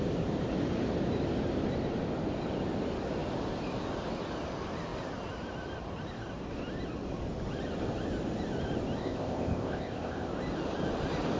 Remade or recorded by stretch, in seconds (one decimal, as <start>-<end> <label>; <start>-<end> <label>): 0.0-9.0 recorded; 9.0-10.3 remade; 10.3-11.4 recorded